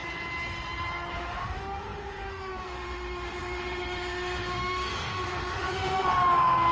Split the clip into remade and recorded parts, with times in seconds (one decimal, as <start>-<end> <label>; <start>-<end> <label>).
0.0-1.1 recorded; 1.1-6.7 remade